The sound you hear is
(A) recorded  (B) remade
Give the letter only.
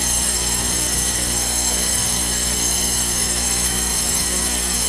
B